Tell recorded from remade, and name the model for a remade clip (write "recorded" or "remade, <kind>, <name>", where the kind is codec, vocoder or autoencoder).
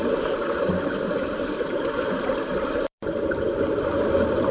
remade, vocoder, BigVGAN v2